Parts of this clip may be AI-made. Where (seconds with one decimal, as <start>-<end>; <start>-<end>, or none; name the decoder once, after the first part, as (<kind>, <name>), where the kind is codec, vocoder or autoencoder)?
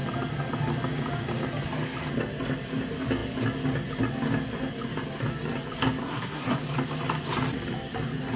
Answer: 6.0-6.6 (codec, SNAC)